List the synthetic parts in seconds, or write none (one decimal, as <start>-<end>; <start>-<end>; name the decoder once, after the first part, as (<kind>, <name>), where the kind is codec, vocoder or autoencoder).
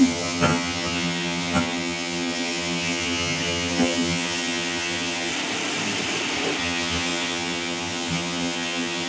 0.0-5.3 (vocoder, HiFi-GAN); 6.6-9.1